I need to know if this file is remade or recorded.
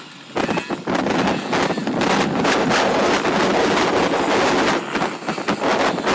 recorded